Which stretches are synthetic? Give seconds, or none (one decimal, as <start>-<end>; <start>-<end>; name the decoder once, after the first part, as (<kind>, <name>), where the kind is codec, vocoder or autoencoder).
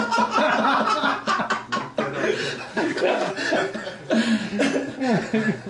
2.7-3.3 (codec, SNAC)